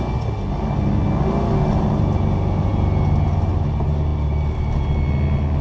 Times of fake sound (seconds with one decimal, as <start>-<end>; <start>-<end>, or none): none